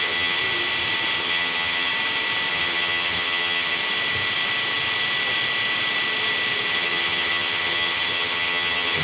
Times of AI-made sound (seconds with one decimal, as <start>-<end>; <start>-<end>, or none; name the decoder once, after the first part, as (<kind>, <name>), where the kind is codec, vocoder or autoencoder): 0.0-0.4 (vocoder, HiFi-GAN); 1.2-1.9; 2.5-3.8; 6.7-9.0